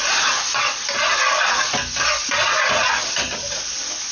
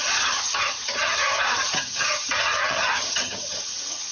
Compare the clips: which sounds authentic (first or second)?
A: first